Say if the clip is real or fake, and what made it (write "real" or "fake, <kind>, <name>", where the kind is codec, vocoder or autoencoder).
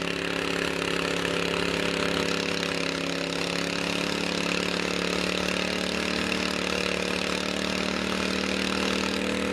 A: real